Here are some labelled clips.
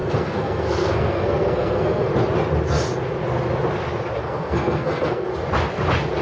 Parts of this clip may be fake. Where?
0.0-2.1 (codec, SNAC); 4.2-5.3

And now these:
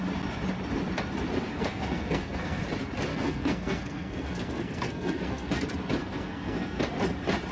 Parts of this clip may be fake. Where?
1.5-2.6 (codec, SNAC); 3.1-5.6; 6.0-6.8

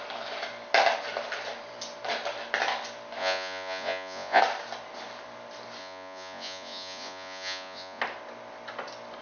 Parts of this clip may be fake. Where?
3.2-4.4 (vocoder, Vocos); 5.8-8.0

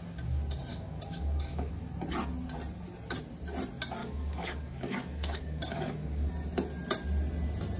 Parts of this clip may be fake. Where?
0.7-1.7 (codec, DAC); 4.0-6.3

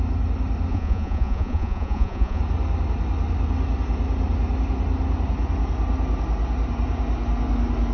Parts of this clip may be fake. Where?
0.7-2.4 (vocoder, Vocos)